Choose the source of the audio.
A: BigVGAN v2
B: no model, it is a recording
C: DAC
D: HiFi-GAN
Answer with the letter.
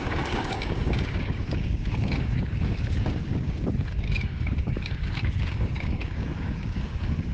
C